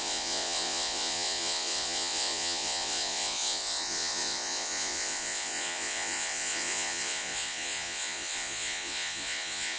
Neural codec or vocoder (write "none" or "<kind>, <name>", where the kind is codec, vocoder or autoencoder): vocoder, Vocos